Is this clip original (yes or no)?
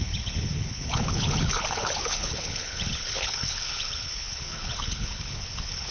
no